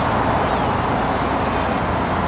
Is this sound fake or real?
real